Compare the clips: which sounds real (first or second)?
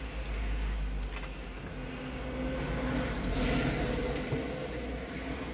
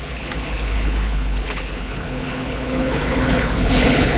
first